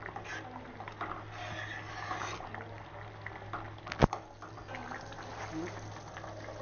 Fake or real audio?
real